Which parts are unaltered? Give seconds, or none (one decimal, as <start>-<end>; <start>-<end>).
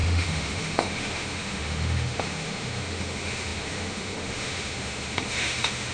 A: none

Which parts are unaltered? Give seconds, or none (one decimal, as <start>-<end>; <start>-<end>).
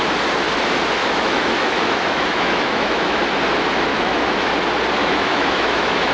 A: 0.0-1.0; 3.2-3.9; 4.5-5.0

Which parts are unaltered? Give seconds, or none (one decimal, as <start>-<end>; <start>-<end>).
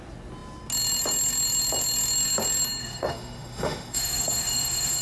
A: 0.0-2.8